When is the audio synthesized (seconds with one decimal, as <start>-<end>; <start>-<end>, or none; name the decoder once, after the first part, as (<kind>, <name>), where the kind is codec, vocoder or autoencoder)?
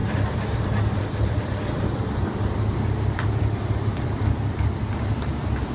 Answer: 0.0-5.7 (vocoder, BigVGAN v2)